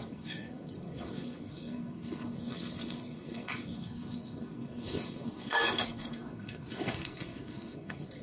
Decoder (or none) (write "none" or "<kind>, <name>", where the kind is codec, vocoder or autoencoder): codec, SNAC